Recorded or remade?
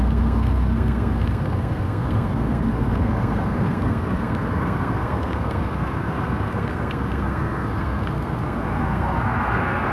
remade